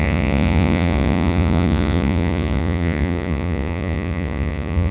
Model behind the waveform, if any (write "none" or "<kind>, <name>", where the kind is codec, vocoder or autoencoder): vocoder, Vocos